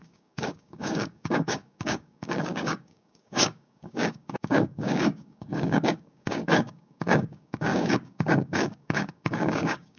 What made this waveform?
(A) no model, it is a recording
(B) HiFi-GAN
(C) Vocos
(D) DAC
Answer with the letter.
D